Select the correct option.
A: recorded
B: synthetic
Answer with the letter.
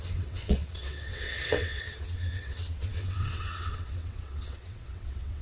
B